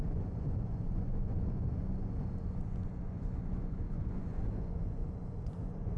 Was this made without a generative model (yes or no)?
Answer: no